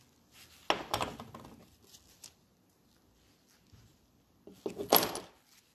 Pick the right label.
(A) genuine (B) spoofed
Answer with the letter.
A